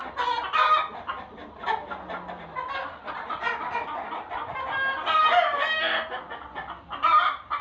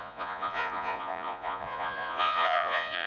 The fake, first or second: second